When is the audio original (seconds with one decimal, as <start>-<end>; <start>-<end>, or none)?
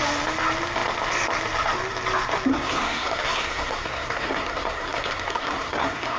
0.0-2.5